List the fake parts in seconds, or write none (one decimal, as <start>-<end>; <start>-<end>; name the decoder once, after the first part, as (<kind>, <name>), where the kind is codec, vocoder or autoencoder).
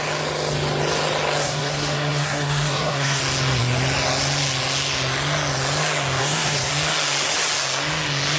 1.4-3.2 (codec, SNAC); 6.2-6.7